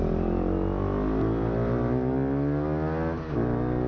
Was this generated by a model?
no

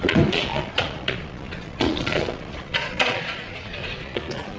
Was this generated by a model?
yes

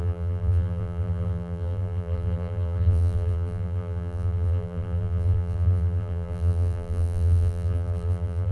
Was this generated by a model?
yes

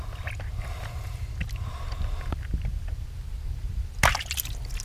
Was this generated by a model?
no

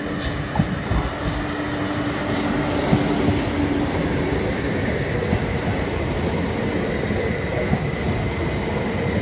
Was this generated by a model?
no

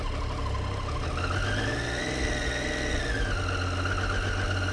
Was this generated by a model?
no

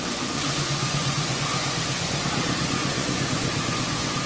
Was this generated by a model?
yes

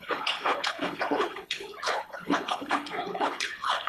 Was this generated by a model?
yes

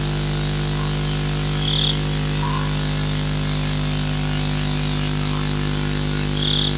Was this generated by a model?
no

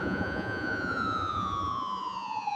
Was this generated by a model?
yes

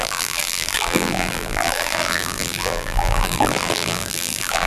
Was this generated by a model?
yes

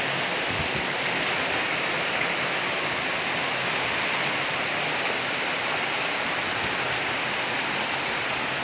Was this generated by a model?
no